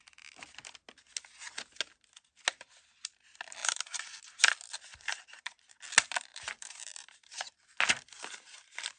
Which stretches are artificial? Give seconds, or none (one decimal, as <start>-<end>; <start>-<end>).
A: 3.6-4.4; 4.9-5.8; 6.3-7.5